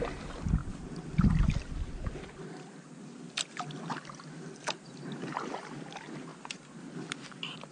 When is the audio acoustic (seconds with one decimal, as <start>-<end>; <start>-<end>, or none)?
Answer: 0.0-7.7